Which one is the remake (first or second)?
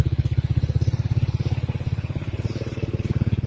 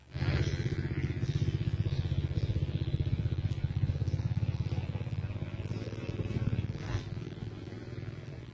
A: second